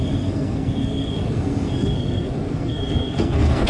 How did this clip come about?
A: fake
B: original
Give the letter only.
A